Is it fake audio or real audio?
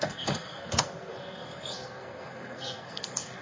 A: fake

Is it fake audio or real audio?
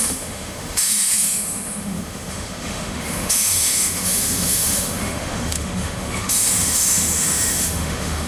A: fake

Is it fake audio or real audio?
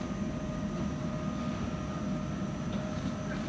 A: real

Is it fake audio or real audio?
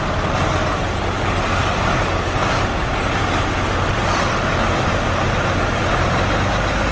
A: real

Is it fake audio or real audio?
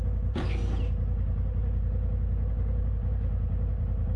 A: real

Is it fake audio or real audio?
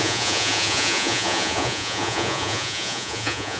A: fake